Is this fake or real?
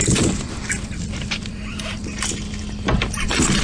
fake